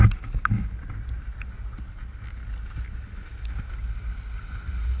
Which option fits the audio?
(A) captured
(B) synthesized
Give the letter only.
A